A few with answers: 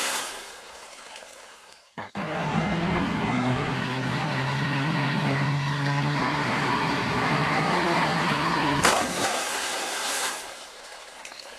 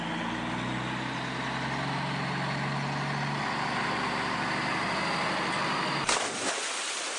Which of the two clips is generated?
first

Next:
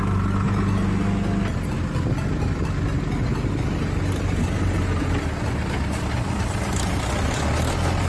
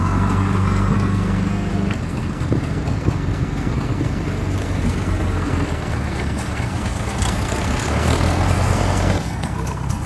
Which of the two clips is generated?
second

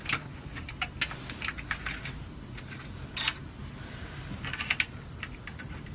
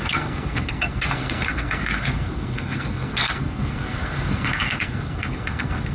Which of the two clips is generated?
second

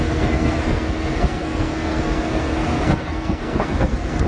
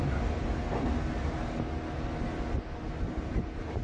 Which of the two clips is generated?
first